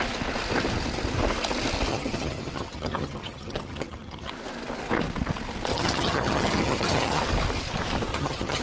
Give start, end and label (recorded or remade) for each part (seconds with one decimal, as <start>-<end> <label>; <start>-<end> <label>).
0.0-1.9 recorded; 1.9-4.3 remade; 4.3-5.7 recorded; 5.7-7.2 remade; 7.2-8.1 recorded; 8.1-8.6 remade